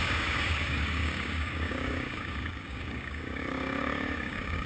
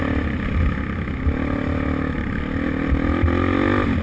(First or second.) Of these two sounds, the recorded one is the second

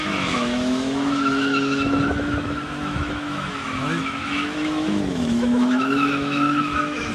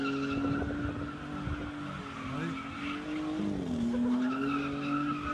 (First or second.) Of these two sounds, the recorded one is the second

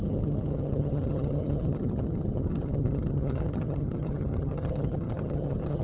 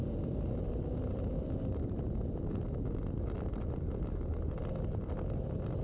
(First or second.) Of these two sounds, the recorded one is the second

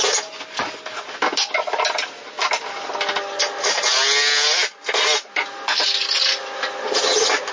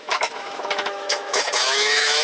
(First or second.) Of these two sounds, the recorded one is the first